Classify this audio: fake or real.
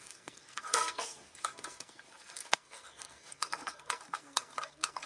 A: fake